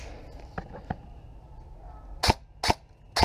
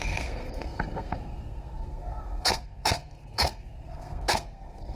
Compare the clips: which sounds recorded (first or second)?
first